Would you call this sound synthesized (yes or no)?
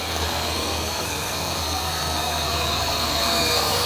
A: yes